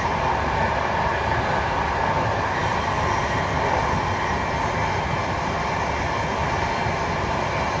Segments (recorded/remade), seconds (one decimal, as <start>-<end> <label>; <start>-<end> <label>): 0.0-7.8 recorded